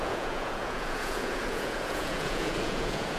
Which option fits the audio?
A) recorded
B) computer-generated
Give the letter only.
B